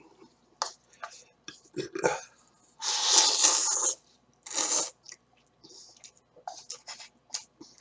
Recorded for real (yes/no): yes